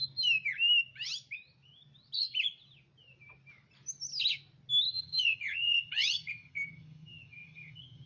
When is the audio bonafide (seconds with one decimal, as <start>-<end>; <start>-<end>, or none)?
0.0-4.9